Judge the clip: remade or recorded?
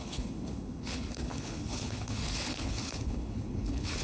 remade